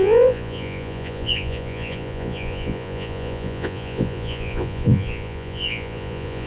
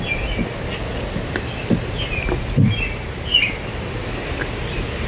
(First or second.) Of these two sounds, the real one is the second